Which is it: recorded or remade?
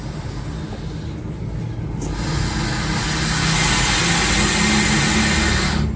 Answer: recorded